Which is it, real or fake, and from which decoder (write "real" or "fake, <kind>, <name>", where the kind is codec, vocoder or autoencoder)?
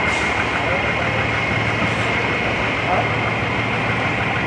real